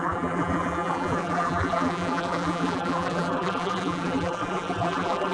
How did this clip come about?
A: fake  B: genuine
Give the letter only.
A